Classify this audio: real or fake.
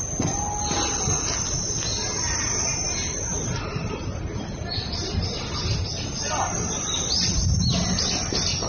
real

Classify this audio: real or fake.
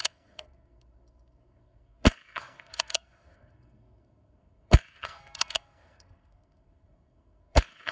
fake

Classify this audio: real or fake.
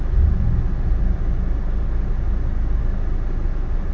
real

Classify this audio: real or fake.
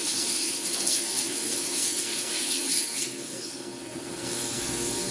fake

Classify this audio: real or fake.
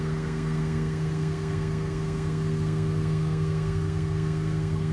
fake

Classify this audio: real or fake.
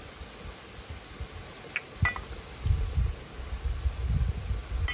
real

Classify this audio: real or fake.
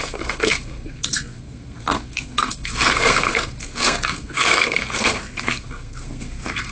fake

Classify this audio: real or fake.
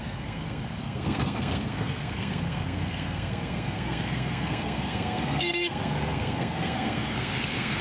fake